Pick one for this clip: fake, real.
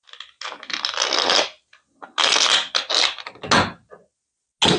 real